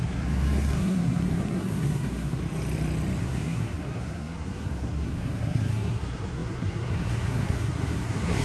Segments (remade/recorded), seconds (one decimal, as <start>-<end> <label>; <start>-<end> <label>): 0.0-2.4 remade; 2.4-3.2 recorded; 3.2-8.4 remade